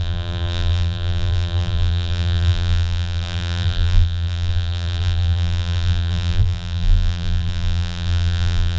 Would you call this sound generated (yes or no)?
yes